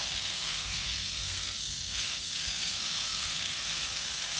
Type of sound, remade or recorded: remade